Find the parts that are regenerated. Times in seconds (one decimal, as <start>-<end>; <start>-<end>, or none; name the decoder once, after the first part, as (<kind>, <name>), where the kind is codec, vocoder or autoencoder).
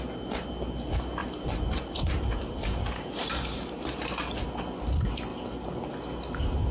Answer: 1.2-3.9 (vocoder, BigVGAN v2)